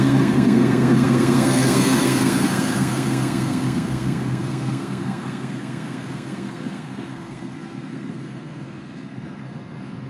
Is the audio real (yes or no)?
no